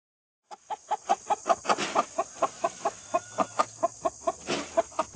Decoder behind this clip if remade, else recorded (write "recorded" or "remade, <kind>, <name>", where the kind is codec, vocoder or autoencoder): recorded